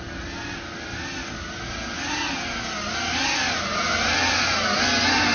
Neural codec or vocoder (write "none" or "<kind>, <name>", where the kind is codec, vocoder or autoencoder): none